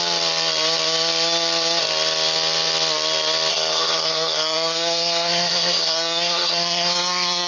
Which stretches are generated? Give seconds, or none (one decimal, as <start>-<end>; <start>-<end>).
3.5-7.5